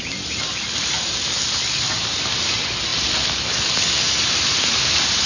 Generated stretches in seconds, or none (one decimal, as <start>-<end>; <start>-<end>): none